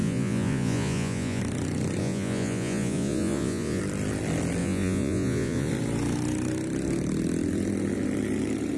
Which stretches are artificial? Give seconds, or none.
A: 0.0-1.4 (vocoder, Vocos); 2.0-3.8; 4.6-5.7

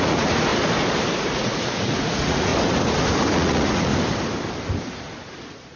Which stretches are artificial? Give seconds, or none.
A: 0.0-0.5 (vocoder, Vocos); 1.2-2.5; 3.3-3.9; 5.3-5.8

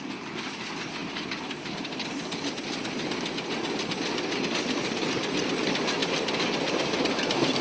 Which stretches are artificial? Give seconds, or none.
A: 1.0-2.5 (vocoder, BigVGAN v2); 6.0-7.6

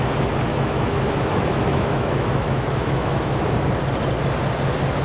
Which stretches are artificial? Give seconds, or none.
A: 0.5-3.5 (autoencoder, DAC-VAE)